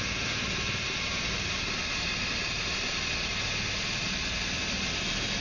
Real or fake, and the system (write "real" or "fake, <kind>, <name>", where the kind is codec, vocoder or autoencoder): real